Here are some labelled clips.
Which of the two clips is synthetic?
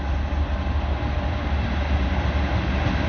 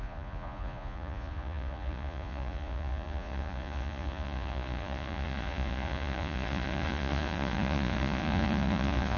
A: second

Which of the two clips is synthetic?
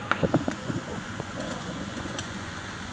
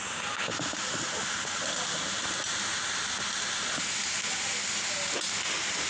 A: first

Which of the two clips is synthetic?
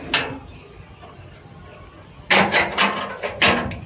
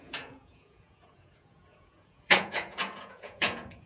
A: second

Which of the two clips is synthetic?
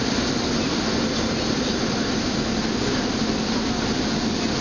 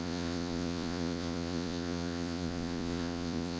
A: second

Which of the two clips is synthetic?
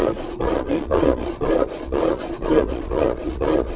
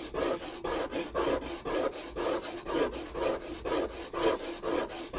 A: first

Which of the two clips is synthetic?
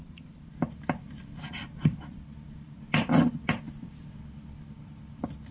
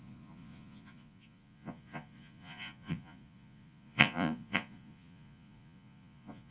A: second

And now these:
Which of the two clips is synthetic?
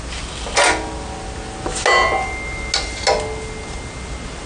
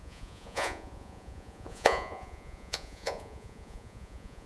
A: second